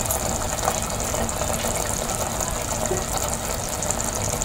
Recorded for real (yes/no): yes